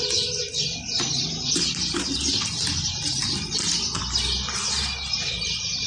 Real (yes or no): yes